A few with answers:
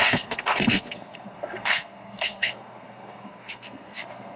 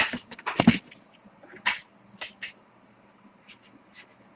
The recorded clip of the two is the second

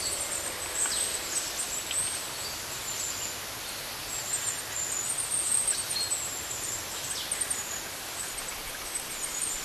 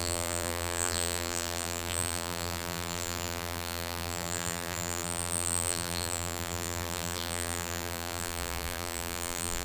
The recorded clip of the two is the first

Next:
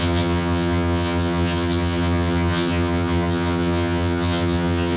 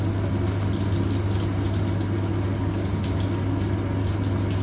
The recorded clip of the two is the second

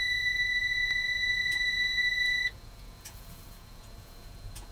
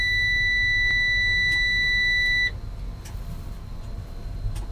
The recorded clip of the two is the second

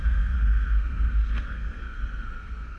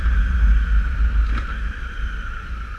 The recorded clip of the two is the second